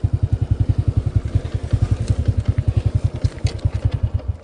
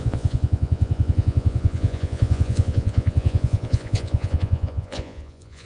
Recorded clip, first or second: first